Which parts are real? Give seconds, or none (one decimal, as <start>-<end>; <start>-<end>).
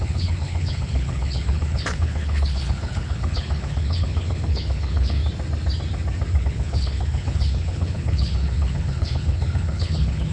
5.2-6.4